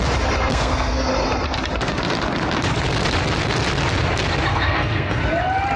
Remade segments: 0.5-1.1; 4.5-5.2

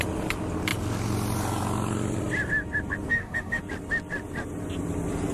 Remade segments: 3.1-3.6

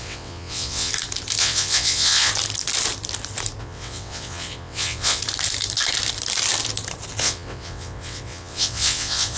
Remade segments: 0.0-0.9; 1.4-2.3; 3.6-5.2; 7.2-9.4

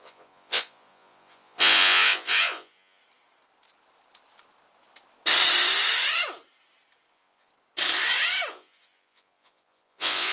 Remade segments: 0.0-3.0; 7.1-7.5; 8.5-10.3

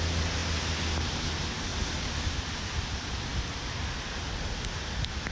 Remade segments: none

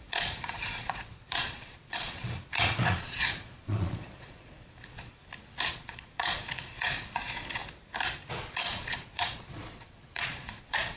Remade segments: 0.0-5.2; 5.7-7.6; 8.3-11.0

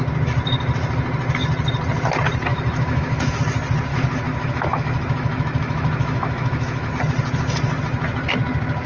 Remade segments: 2.5-3.4; 3.9-6.9